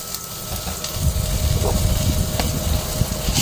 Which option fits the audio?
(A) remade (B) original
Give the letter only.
B